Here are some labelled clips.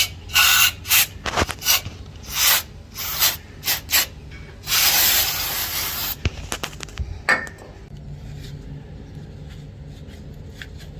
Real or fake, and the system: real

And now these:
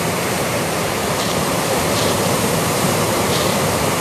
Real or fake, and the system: fake, vocoder, BigVGAN v2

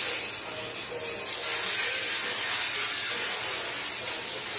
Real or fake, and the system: real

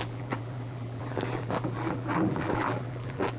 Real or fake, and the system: fake, vocoder, BigVGAN v2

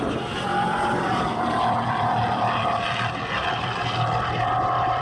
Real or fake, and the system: fake, vocoder, BigVGAN v2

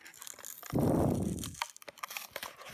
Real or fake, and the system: real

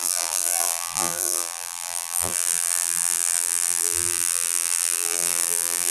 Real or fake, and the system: fake, vocoder, BigVGAN v2